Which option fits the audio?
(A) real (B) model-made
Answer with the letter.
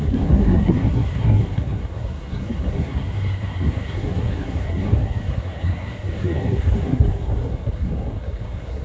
B